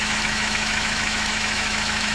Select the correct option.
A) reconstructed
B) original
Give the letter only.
A